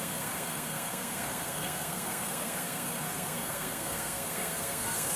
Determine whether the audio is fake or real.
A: fake